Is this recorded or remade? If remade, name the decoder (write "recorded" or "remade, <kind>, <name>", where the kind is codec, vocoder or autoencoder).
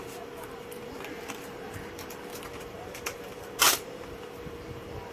remade, vocoder, BigVGAN v2